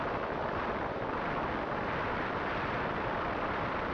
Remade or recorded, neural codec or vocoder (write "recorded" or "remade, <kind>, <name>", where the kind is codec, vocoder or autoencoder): remade, vocoder, BigVGAN v2